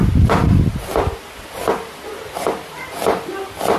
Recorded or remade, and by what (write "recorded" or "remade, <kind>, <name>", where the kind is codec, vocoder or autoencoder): remade, vocoder, BigVGAN v2